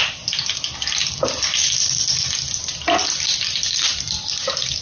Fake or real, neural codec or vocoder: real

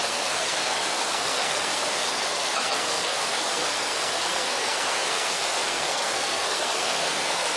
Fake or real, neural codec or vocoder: fake, codec, SNAC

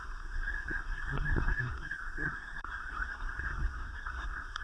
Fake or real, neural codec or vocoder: fake, codec, SNAC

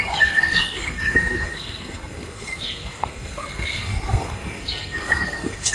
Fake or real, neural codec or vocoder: fake, codec, SNAC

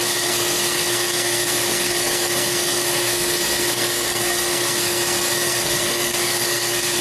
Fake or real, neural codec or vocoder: fake, codec, SNAC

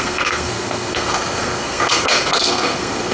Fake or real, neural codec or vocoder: fake, codec, SNAC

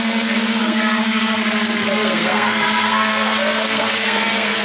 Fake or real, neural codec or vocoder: fake, codec, SNAC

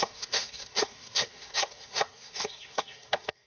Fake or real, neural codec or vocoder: fake, codec, SNAC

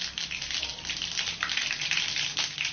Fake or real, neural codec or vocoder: real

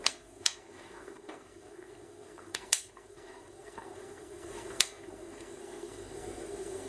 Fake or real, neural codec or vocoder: fake, codec, SNAC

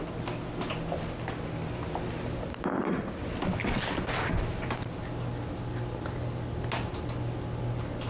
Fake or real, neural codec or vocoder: real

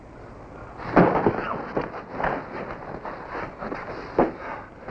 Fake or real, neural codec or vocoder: real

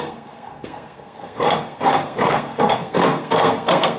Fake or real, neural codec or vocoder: fake, codec, SNAC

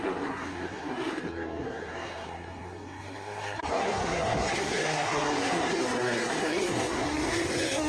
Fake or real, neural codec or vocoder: fake, codec, SNAC